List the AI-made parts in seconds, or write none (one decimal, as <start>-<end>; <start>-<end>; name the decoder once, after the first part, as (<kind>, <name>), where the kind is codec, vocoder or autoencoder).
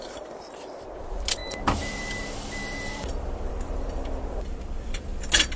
0.0-5.1 (vocoder, BigVGAN v2)